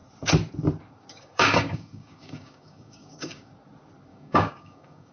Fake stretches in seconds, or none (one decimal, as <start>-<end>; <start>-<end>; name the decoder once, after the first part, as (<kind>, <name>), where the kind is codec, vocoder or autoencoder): 1.1-3.5 (codec, DAC); 4.1-5.1